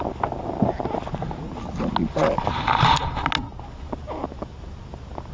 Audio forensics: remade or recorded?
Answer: recorded